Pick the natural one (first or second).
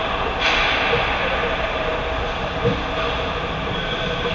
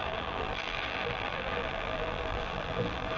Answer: first